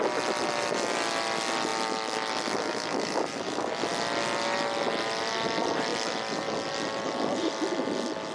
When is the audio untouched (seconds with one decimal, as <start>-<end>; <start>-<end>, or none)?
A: 0.0-8.3